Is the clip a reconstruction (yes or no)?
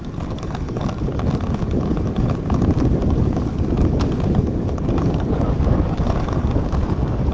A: yes